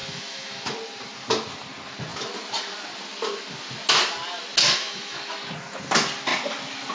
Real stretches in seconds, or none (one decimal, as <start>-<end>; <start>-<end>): 0.7-4.6; 5.3-6.9